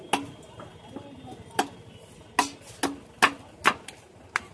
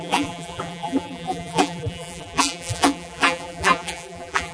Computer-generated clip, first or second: second